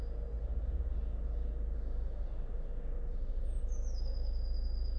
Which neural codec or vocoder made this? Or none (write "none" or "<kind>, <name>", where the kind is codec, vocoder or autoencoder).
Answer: none